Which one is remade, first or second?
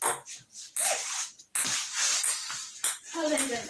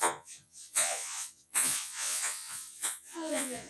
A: second